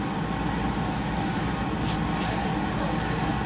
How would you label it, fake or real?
real